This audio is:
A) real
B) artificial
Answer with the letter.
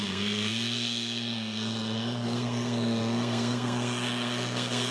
B